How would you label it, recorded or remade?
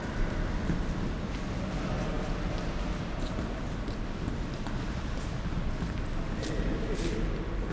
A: recorded